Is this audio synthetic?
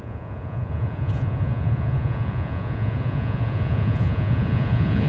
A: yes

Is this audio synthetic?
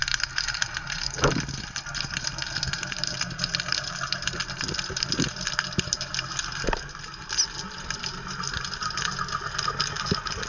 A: no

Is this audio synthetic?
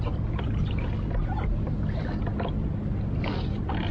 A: no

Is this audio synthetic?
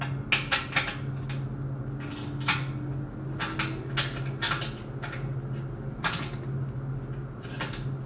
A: no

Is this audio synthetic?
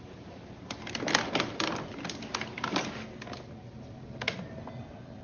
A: no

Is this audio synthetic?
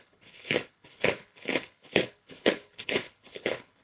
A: yes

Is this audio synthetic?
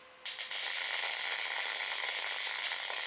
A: no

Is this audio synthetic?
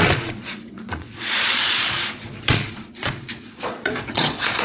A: yes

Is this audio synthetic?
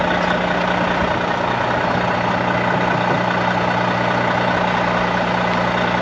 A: no